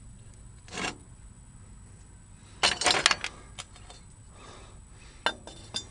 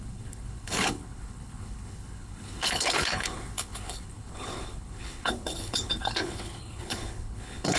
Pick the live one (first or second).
first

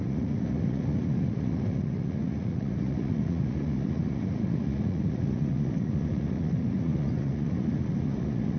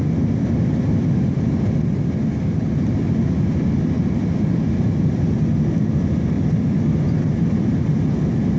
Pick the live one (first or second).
second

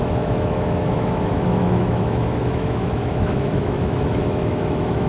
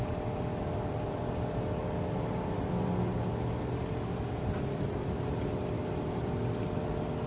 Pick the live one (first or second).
second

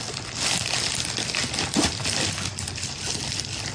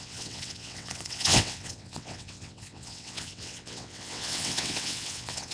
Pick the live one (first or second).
first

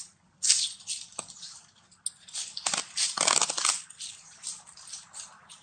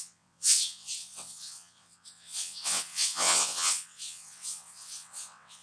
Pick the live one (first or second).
first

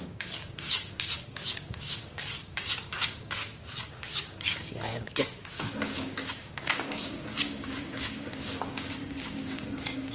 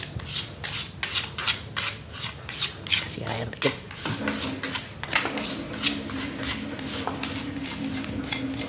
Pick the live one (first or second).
second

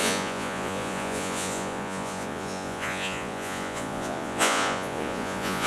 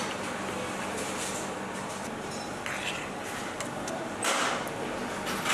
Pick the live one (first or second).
second